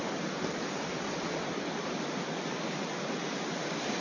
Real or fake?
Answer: real